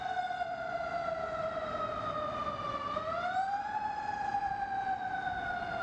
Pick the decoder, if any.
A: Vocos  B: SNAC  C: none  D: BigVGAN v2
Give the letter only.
C